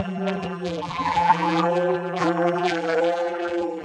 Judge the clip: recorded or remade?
remade